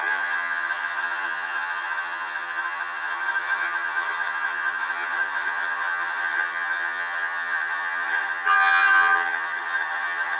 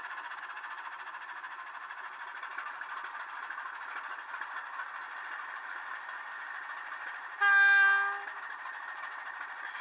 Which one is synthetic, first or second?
first